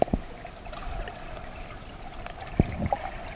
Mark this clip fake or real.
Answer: real